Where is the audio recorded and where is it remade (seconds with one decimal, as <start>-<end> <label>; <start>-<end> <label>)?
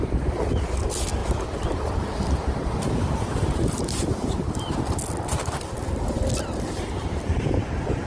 0.0-1.2 recorded; 1.2-4.7 remade; 4.7-8.1 recorded